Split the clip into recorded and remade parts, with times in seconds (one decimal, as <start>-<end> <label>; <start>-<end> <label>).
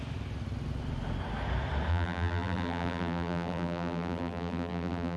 0.0-1.9 recorded; 1.9-5.2 remade